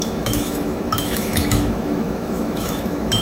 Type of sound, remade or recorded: remade